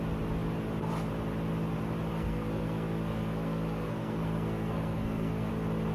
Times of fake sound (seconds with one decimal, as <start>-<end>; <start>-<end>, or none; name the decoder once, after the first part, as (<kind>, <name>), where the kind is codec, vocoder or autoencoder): 2.1-5.5 (codec, SNAC)